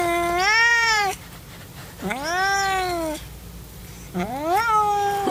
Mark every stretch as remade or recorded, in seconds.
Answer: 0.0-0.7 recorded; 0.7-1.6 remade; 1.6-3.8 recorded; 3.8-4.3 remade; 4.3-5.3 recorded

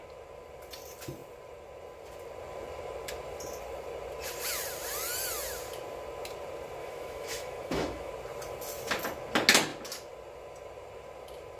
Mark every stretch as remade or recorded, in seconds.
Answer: 0.0-6.8 recorded; 6.8-8.1 remade; 8.1-11.6 recorded